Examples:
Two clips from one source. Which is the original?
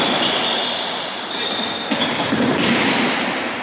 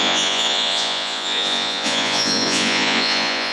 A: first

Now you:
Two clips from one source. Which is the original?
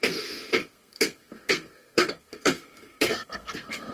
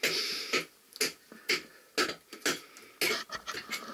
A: second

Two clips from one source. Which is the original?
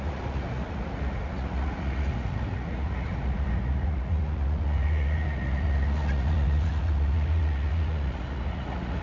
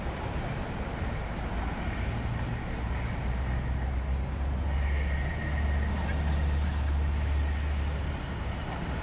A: second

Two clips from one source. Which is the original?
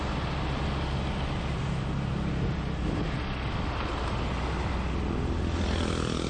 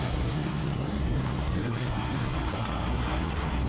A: first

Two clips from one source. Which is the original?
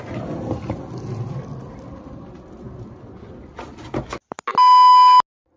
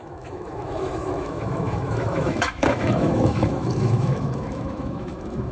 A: first